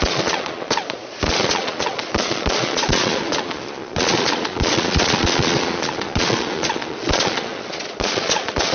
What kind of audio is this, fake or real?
fake